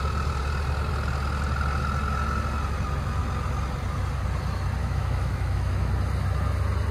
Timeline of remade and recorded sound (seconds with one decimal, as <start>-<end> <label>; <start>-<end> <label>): 0.0-4.8 recorded; 4.8-5.9 remade; 5.9-6.9 recorded